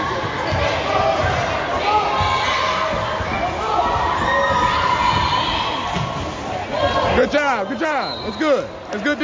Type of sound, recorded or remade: recorded